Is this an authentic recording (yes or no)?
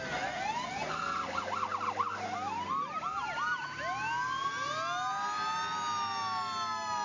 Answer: yes